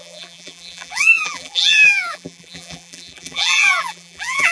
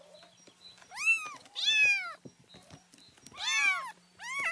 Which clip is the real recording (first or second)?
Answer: second